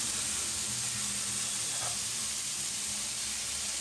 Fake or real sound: real